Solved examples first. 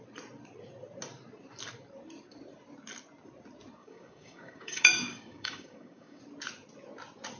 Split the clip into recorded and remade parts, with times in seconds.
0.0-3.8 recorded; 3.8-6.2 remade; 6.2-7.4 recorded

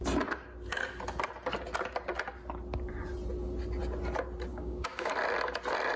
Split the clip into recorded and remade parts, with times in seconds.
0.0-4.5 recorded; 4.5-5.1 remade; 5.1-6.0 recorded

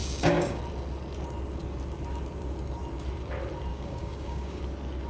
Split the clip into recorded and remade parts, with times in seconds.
0.0-0.6 remade; 0.6-3.7 recorded; 3.7-4.6 remade; 4.6-5.1 recorded